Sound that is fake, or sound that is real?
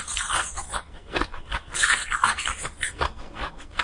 fake